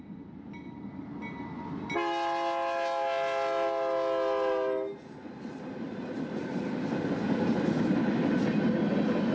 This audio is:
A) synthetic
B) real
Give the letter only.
B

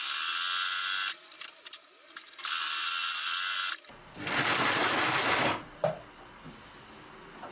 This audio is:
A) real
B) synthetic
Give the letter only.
A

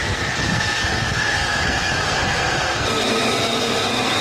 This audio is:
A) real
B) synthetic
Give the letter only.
B